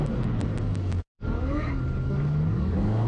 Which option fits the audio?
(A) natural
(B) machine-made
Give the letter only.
B